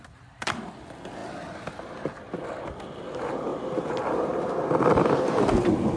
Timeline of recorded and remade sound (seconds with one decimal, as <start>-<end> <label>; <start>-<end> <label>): 0.0-6.0 recorded